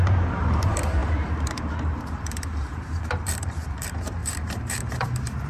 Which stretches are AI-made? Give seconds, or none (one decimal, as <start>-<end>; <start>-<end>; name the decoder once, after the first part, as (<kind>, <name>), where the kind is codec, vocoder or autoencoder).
0.0-5.5 (vocoder, BigVGAN v2)